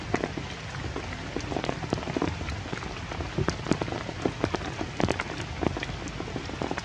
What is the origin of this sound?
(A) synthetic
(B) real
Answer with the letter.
B